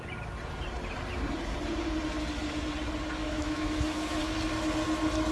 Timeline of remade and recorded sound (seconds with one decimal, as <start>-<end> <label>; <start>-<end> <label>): 0.0-3.2 recorded; 3.2-4.2 remade; 4.2-5.3 recorded